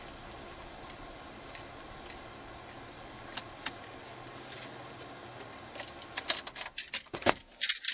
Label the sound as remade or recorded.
recorded